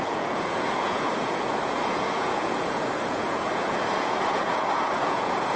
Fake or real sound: fake